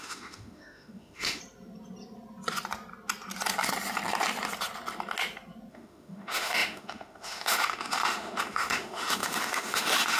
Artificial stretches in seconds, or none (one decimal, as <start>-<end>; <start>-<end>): 0.0-1.4; 5.7-10.2

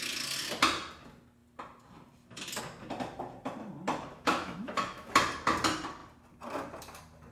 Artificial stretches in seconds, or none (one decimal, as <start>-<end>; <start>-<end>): 4.1-5.1

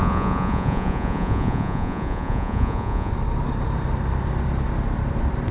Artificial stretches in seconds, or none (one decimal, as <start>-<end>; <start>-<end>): 0.0-3.1

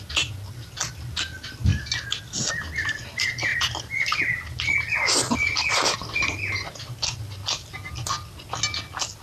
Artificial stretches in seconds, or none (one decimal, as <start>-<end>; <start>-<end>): 3.5-8.5

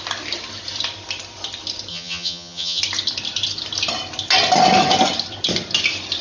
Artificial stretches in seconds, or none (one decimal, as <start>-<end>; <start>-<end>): 1.9-2.8

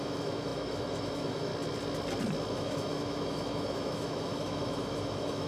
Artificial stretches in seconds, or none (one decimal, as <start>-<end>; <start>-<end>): 0.0-1.5; 2.5-5.5